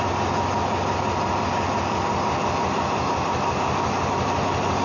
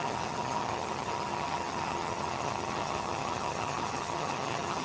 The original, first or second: first